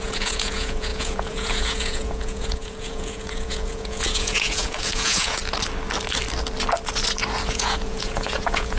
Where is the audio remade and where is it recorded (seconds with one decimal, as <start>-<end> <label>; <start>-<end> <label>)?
0.0-5.4 remade; 5.4-7.5 recorded; 7.5-8.8 remade